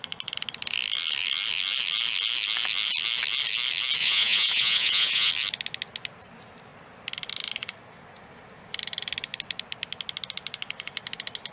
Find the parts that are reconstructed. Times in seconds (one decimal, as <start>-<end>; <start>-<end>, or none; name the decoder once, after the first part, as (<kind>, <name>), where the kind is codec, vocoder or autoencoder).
4.0-5.3 (vocoder, Vocos)